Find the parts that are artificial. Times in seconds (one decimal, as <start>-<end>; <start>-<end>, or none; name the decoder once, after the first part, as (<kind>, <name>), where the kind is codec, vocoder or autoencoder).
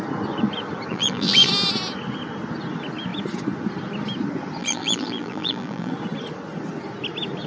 0.9-1.5 (vocoder, BigVGAN v2); 4.6-5.9